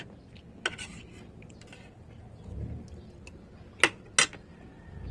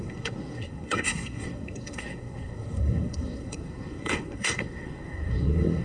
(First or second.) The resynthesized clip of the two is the second